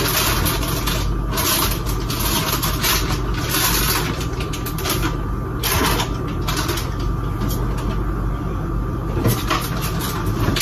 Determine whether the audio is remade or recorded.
recorded